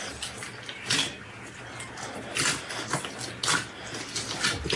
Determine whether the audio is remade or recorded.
recorded